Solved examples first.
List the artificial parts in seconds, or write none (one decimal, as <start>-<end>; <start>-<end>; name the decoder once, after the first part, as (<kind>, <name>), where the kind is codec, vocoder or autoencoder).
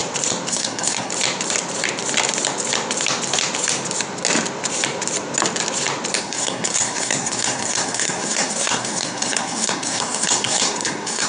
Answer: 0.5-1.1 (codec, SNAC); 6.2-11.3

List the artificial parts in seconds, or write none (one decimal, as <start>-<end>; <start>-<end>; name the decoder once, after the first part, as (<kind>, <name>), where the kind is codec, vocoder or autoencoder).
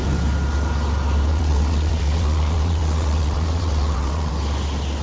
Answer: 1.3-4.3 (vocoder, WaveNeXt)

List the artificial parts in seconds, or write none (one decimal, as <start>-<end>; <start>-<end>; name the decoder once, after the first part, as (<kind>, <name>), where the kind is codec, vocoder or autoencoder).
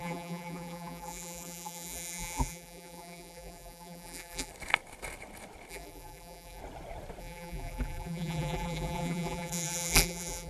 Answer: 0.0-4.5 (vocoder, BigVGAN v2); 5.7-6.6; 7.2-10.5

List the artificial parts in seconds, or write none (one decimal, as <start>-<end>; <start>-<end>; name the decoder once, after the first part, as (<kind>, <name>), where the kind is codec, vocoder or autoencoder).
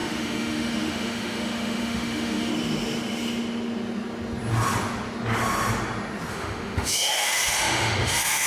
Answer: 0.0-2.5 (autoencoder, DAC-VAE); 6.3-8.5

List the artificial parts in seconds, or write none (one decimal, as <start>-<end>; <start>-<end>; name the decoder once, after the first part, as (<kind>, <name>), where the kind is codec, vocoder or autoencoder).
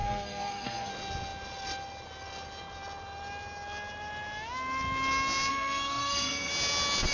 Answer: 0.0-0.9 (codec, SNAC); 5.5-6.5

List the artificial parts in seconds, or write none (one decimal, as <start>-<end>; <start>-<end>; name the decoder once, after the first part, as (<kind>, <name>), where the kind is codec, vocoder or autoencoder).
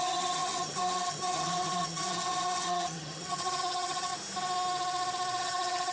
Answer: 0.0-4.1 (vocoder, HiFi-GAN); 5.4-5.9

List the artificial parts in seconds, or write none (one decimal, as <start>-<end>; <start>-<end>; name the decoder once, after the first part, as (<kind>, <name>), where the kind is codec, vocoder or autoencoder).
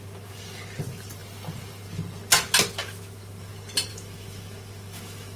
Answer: 2.8-3.5 (autoencoder, DAC-VAE); 3.9-5.4